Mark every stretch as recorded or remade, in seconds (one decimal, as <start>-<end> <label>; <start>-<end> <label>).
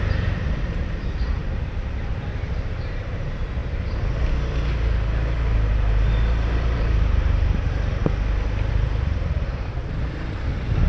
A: 0.0-1.4 remade; 1.4-2.1 recorded; 2.1-3.6 remade; 3.6-5.9 recorded; 5.9-8.0 remade; 8.0-8.7 recorded; 8.7-10.9 remade